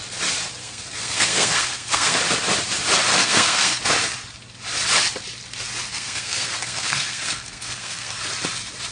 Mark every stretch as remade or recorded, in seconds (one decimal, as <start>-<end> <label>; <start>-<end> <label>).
0.0-0.6 recorded; 0.6-2.2 remade; 2.2-3.1 recorded; 3.1-3.8 remade; 3.8-5.9 recorded; 5.9-8.2 remade; 8.2-8.9 recorded